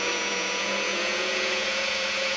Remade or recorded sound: remade